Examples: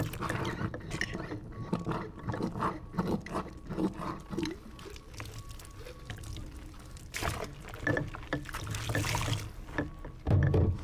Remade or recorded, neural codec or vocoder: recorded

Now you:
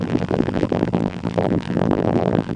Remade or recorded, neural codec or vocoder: remade, vocoder, BigVGAN v2